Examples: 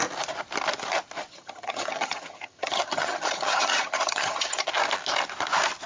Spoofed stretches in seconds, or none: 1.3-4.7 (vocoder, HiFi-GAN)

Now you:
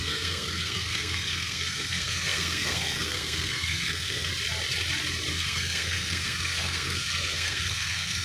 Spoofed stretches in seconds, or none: 0.0-4.3 (codec, SNAC); 5.3-8.2